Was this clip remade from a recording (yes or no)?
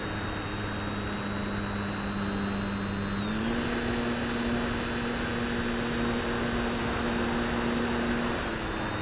no